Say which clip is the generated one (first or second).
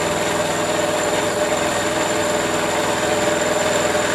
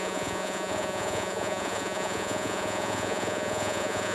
second